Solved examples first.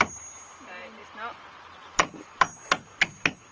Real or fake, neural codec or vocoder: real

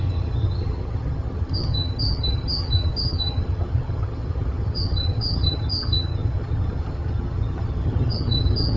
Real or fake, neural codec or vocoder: fake, vocoder, HiFi-GAN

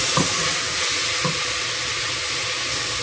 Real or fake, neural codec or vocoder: real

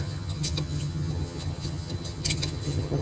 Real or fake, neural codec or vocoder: fake, vocoder, HiFi-GAN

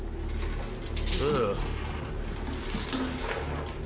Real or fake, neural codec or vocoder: real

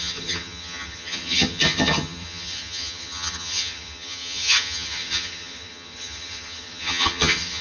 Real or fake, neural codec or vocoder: fake, vocoder, HiFi-GAN